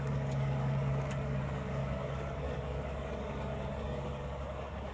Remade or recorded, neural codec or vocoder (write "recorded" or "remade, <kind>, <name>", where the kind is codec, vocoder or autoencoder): remade, codec, DAC